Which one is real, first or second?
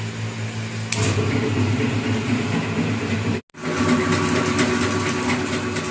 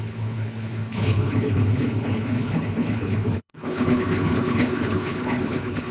first